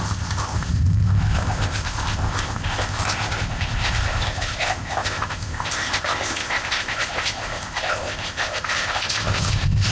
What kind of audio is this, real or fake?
fake